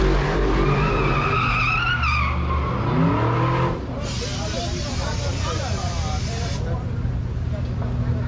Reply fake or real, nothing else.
real